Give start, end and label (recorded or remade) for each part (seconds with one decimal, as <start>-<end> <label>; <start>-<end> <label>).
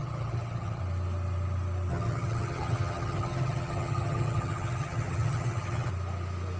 0.0-0.8 remade; 0.8-1.9 recorded; 1.9-5.9 remade; 5.9-6.6 recorded